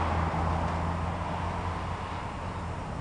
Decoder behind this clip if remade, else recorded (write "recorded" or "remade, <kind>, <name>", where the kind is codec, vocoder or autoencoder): recorded